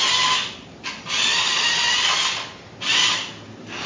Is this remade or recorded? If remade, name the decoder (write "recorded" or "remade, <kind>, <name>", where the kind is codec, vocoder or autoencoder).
recorded